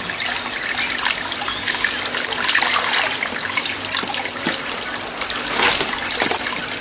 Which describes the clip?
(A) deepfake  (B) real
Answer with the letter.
B